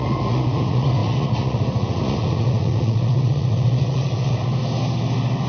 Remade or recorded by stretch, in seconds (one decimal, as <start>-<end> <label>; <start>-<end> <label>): 0.0-4.5 remade; 4.5-5.5 recorded